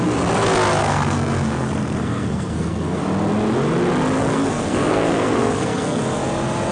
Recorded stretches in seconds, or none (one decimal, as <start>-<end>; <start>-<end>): 0.0-0.8; 3.0-4.2; 6.0-6.7